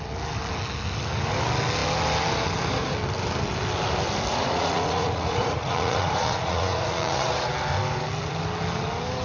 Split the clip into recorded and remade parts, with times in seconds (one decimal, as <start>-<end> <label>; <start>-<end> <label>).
0.0-4.3 recorded; 4.3-7.5 remade; 7.5-9.2 recorded